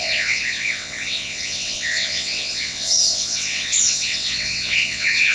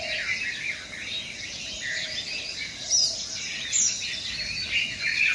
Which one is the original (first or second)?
second